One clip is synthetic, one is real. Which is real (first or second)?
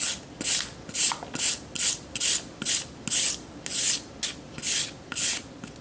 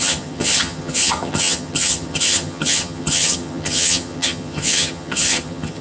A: first